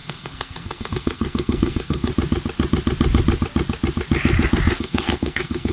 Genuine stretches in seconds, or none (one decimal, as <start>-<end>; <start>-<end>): 2.1-4.8